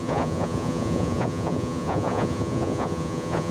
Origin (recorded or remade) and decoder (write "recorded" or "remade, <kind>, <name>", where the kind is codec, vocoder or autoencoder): remade, vocoder, Vocos